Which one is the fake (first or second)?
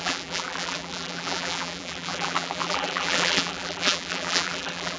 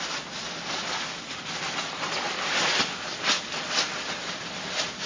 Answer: first